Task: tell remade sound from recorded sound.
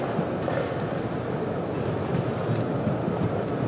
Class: recorded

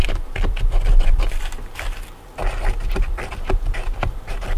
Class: remade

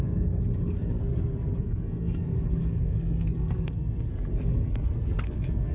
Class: remade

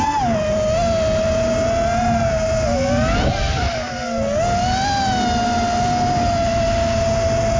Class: recorded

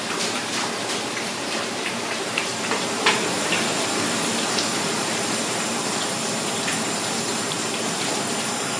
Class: remade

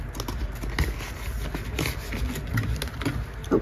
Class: recorded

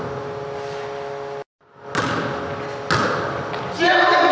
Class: recorded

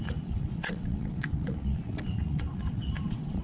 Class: remade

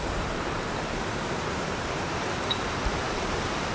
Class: remade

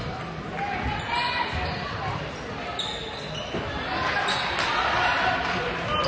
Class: recorded